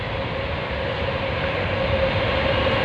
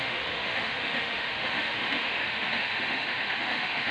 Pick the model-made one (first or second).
second